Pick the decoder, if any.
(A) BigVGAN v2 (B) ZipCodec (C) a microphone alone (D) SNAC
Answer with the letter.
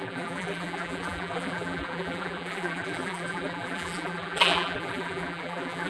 A